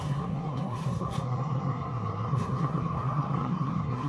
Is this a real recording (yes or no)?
no